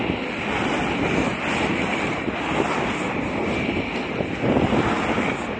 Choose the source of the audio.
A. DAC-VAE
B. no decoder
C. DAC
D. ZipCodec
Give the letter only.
B